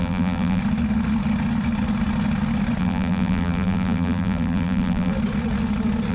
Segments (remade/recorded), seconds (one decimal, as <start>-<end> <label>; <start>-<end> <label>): 0.0-0.6 remade; 0.6-2.8 recorded; 2.8-5.1 remade; 5.1-6.1 recorded